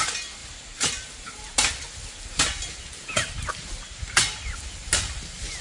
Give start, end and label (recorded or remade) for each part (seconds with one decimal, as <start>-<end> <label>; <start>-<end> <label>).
0.0-5.6 recorded